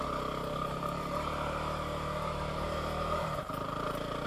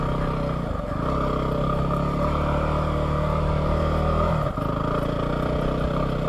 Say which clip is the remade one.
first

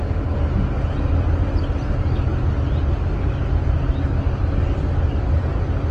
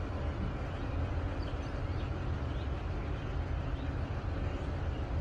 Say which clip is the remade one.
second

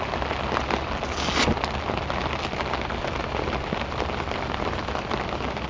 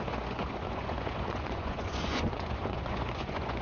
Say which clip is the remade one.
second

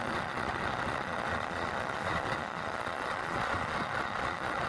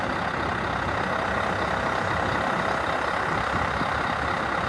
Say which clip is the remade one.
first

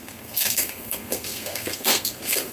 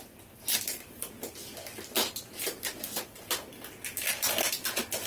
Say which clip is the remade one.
first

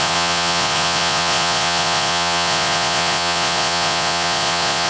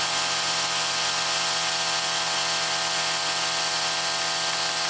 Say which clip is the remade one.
first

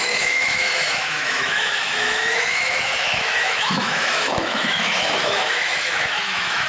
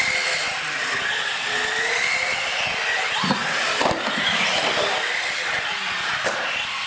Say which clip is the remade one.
first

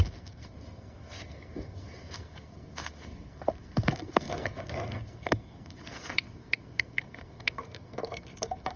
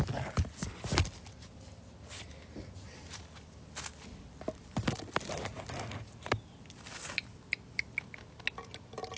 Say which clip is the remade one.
first